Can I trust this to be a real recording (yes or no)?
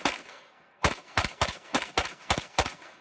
no